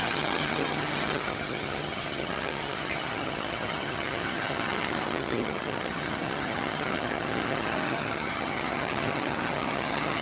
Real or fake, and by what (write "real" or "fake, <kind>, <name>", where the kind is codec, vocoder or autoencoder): fake, vocoder, HiFi-GAN